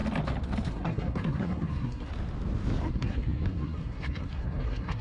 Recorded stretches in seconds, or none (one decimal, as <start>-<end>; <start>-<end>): 0.0-0.7; 2.1-2.9